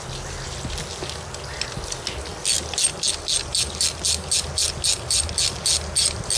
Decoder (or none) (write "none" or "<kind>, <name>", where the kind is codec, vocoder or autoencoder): none